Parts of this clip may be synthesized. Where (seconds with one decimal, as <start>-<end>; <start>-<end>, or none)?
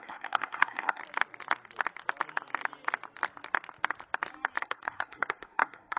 0.0-1.0; 4.6-6.0